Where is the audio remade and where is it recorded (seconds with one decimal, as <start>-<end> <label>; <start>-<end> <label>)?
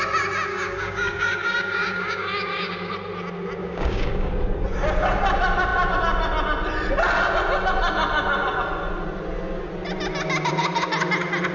0.0-0.5 recorded; 0.5-2.9 remade; 2.9-3.6 recorded; 3.6-4.3 remade; 4.3-11.5 recorded